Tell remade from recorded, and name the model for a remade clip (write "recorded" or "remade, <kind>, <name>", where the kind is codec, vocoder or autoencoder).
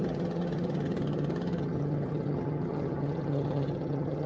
remade, vocoder, HiFi-GAN